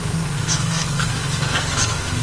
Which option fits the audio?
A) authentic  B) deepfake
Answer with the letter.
B